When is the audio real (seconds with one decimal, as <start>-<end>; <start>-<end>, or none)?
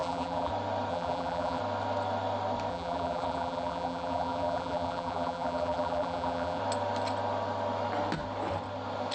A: 0.5-0.9; 1.6-2.7; 6.6-9.1